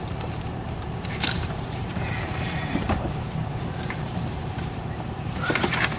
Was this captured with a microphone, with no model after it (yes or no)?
no